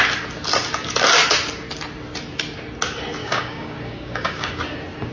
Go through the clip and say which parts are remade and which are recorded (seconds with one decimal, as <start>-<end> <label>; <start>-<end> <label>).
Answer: 0.0-3.2 recorded; 3.2-4.6 remade; 4.6-5.1 recorded